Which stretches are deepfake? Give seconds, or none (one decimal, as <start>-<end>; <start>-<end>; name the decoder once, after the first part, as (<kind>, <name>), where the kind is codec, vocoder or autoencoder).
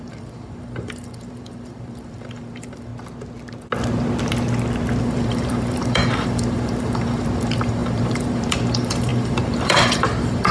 0.0-2.9 (vocoder, BigVGAN v2); 5.0-10.5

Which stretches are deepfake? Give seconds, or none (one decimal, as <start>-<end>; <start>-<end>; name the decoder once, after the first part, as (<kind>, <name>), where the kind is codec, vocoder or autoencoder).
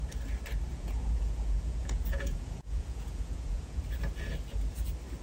0.7-3.8 (vocoder, Vocos)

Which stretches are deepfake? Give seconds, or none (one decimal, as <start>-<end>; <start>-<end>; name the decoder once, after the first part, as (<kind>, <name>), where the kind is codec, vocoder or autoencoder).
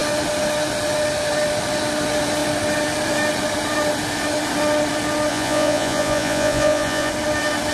5.3-7.1 (vocoder, Vocos)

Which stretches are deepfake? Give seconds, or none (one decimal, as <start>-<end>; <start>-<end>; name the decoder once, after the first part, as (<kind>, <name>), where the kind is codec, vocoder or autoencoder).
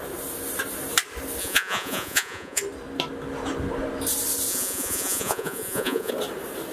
1.4-2.6 (vocoder, Vocos); 4.5-6.1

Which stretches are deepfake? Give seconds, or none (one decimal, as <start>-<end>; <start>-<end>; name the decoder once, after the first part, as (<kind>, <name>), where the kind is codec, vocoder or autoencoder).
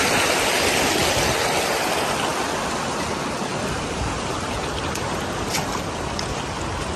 none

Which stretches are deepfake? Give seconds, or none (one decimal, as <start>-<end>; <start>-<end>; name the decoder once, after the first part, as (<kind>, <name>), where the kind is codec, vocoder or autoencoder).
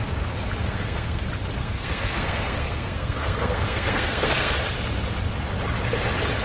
0.6-1.2 (codec, SNAC); 1.6-4.5